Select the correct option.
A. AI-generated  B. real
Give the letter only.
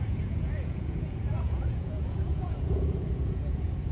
A